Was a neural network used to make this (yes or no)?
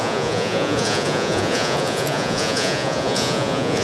yes